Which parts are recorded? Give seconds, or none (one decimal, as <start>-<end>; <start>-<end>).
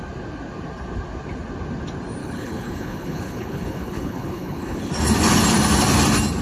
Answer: 0.0-2.2; 4.9-6.4